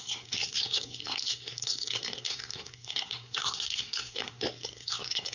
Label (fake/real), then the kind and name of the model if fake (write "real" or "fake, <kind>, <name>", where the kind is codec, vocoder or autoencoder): fake, codec, SNAC